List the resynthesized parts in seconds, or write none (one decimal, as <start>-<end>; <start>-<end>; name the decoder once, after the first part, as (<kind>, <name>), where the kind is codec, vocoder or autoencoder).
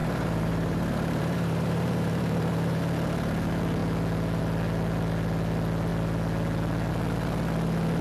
0.0-2.8 (vocoder, BigVGAN v2)